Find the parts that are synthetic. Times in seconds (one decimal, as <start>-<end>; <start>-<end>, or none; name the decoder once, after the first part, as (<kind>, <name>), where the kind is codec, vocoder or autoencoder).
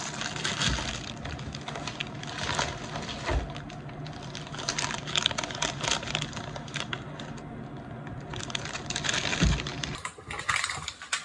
none